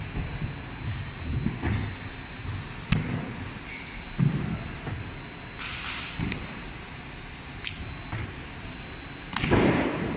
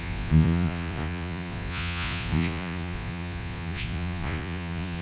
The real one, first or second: first